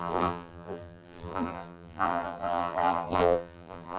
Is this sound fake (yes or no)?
yes